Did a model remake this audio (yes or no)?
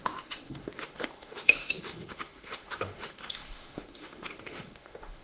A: yes